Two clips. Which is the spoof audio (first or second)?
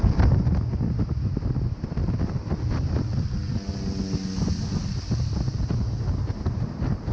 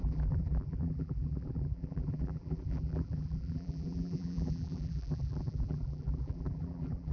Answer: second